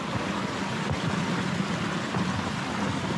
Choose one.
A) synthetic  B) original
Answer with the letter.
B